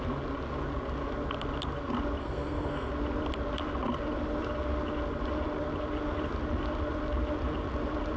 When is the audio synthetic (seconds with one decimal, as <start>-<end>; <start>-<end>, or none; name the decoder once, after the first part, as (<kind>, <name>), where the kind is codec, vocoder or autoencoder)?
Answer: 2.2-2.9 (codec, SNAC)